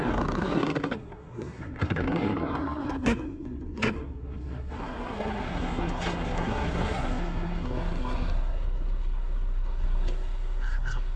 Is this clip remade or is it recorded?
remade